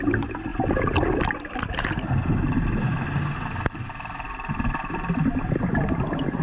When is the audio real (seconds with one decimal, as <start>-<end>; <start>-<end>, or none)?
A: 0.0-6.4